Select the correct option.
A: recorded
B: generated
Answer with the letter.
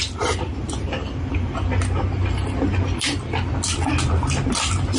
A